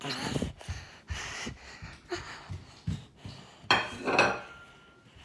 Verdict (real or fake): real